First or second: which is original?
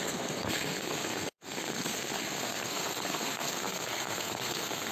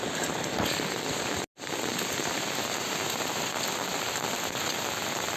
second